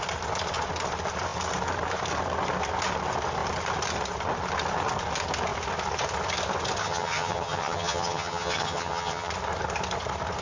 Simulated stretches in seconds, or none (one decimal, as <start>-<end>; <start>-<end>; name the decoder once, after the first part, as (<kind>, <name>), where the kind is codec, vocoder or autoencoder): 6.8-9.3 (vocoder, HiFi-GAN)